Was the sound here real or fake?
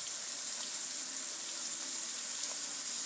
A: real